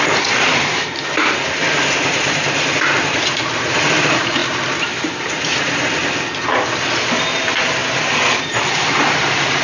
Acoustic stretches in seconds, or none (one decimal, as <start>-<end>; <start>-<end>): 6.0-7.2; 7.8-8.5